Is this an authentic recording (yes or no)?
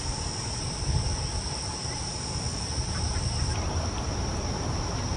yes